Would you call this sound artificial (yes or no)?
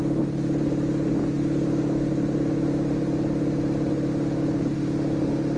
no